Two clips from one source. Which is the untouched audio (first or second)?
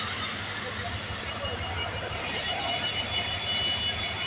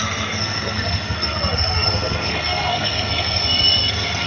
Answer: first